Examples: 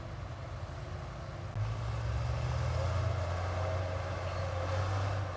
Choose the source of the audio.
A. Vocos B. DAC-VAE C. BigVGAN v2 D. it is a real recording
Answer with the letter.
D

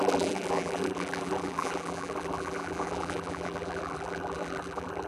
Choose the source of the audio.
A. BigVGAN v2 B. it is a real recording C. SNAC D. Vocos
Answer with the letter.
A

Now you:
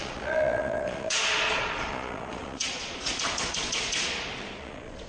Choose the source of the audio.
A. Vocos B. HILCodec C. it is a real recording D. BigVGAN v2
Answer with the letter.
A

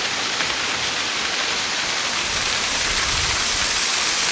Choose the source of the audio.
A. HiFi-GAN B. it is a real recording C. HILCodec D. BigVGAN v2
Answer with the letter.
D